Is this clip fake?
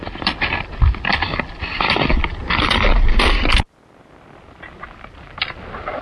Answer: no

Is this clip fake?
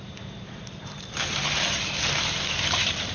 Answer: yes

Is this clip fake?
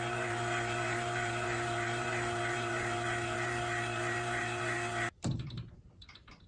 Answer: yes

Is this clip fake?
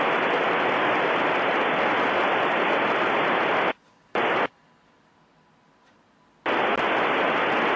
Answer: no